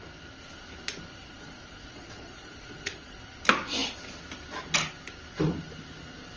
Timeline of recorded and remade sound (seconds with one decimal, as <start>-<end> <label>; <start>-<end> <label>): 0.0-1.2 recorded; 1.2-3.2 remade; 3.2-6.4 recorded